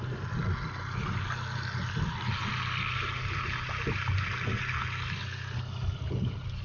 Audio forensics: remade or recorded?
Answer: recorded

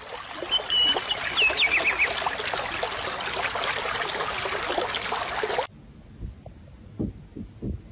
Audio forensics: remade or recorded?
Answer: recorded